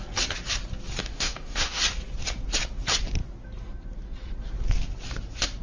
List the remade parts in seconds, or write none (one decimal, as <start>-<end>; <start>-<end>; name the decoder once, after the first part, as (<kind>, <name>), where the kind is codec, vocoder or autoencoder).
1.0-1.8 (autoencoder, DAC-VAE)